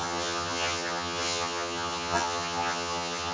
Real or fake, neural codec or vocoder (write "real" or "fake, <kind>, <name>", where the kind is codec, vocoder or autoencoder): fake, vocoder, HiFi-GAN